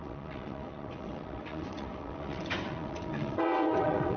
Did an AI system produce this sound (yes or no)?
yes